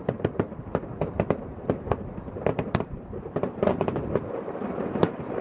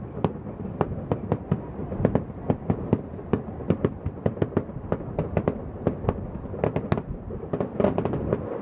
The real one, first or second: second